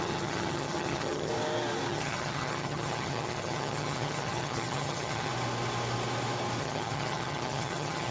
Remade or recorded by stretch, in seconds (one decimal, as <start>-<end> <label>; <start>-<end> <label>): 0.0-1.3 remade; 1.3-1.9 recorded; 1.9-5.3 remade; 5.3-6.6 recorded; 6.6-8.1 remade